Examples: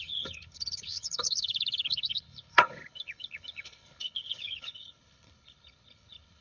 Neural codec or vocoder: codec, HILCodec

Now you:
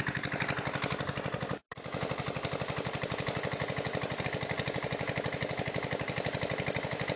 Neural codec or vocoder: none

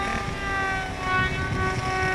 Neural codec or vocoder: none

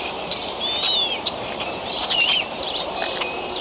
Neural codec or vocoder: vocoder, BigVGAN v2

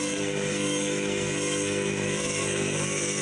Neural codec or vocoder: codec, SNAC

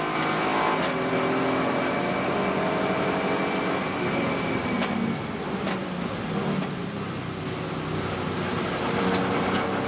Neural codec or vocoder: none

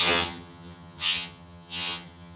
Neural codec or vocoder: vocoder, HiFi-GAN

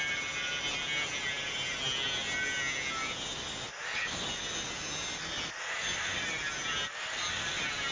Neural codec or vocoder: none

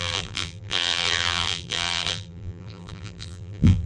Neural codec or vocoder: vocoder, BigVGAN v2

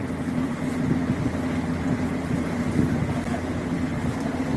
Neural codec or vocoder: none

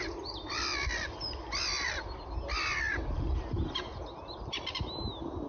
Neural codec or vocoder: none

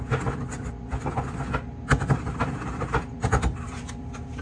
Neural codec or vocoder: none